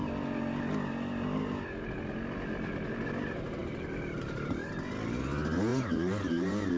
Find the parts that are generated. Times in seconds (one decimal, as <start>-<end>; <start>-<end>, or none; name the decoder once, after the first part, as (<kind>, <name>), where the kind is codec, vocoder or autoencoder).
3.6-4.7 (vocoder, BigVGAN v2); 5.7-6.8